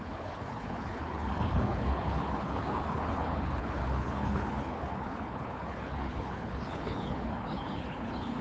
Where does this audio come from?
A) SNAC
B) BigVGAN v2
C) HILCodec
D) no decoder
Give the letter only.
C